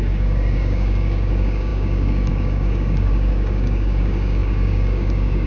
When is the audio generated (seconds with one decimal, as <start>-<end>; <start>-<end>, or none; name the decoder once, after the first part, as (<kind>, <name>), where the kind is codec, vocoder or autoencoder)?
0.0-5.5 (codec, DAC)